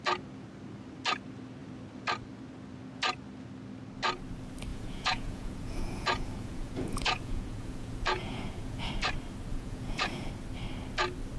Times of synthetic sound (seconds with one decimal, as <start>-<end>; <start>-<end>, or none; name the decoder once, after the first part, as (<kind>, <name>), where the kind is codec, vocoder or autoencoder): 4.7-8.9 (vocoder, Vocos); 9.5-10.3